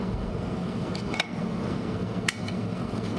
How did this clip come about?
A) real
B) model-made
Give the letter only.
B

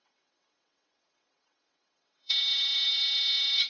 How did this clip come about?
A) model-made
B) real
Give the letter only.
A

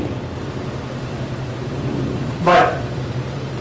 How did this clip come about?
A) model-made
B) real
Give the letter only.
A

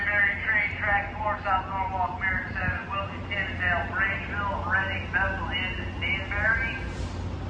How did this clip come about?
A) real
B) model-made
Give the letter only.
A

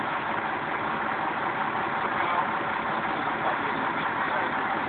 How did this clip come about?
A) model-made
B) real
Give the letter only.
B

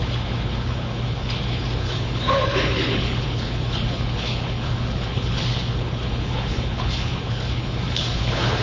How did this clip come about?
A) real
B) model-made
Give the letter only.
B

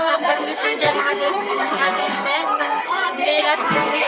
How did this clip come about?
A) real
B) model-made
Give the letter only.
B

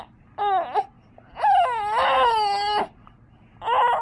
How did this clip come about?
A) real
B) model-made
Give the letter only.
A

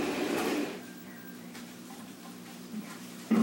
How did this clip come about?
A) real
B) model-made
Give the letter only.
B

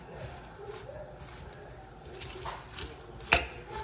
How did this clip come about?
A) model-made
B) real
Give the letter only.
B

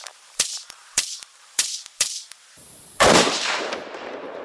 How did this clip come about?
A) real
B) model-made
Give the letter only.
B